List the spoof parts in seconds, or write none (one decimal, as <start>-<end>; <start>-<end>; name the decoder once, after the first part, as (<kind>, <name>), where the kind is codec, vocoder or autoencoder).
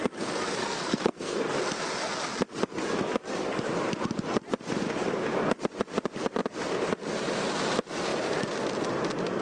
0.6-1.5 (codec, SNAC)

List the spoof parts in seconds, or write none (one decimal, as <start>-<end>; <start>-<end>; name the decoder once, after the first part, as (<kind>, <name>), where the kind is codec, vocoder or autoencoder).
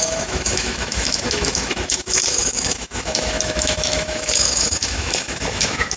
0.0-6.0 (autoencoder, DAC-VAE)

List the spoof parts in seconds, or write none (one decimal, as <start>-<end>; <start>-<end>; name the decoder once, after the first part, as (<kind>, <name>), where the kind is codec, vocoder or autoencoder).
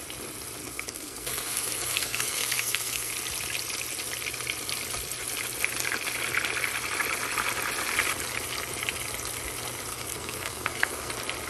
0.6-3.1 (codec, SNAC); 9.9-11.1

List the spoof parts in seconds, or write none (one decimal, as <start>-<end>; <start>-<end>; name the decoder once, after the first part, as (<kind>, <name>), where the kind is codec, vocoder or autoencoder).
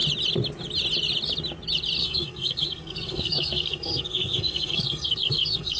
2.0-5.8 (codec, SNAC)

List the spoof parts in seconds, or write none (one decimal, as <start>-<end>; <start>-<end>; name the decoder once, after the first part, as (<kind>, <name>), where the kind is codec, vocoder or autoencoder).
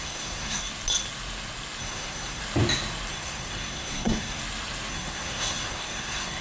0.0-0.6 (codec, SNAC); 1.8-2.4; 3.1-4.4; 4.9-6.4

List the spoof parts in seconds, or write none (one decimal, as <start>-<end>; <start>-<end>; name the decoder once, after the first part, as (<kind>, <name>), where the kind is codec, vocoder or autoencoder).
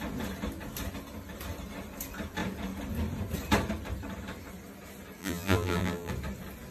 5.2-6.1 (vocoder, BigVGAN v2)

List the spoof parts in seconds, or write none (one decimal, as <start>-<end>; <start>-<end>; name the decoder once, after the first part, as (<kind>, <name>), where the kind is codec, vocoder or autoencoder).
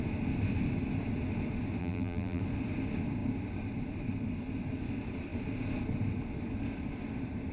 1.8-2.4 (vocoder, BigVGAN v2)